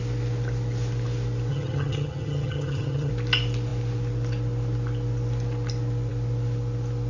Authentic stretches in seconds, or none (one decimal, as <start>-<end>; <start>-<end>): 0.0-1.5; 3.1-7.1